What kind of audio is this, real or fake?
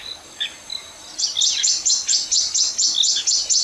real